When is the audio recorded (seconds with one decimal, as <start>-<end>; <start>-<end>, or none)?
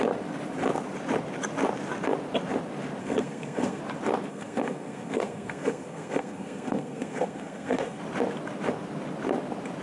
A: 0.0-3.0; 3.8-4.3; 8.0-9.8